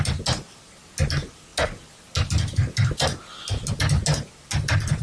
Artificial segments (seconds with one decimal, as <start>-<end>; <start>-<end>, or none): none